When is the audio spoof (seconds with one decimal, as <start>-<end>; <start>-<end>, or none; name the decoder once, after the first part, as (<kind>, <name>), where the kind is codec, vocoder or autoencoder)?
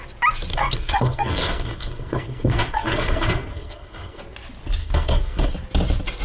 0.5-4.2 (codec, SNAC); 4.8-5.5